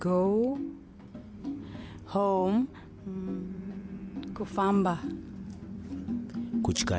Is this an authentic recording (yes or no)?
no